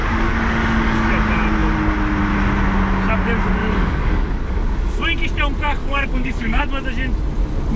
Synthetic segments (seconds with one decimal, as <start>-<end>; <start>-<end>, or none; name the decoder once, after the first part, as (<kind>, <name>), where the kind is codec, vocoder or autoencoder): 0.0-1.1 (codec, DAC); 3.6-5.0; 5.8-6.6